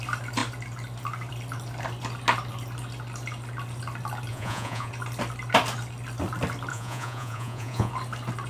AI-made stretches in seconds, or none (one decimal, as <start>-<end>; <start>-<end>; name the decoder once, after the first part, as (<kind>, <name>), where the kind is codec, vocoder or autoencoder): 4.3-4.9 (vocoder, Vocos); 6.7-7.9